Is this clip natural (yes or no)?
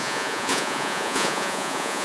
no